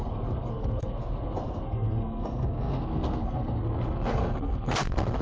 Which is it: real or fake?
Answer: fake